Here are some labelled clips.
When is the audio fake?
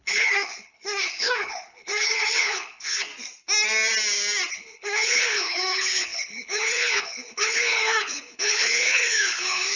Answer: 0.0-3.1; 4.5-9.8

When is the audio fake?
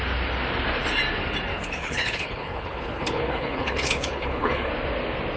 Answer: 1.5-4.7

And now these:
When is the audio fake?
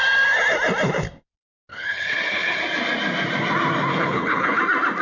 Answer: 1.7-2.6; 3.9-4.6